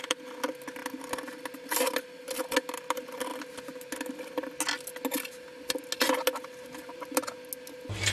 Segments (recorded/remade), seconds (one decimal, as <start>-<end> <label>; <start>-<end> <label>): 0.0-8.1 recorded